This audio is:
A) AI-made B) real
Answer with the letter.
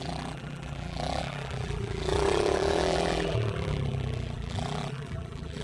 A